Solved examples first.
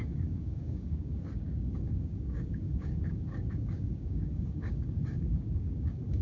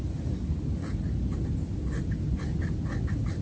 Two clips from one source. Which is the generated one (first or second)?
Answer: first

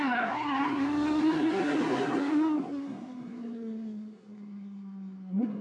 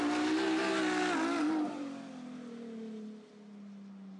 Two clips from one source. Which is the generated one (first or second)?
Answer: first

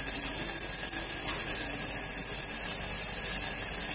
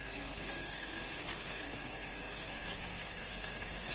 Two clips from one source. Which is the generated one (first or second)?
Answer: second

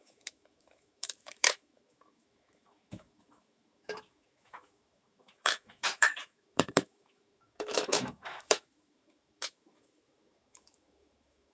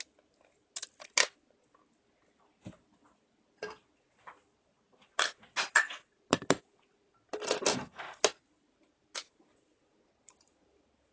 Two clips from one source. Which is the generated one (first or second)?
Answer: first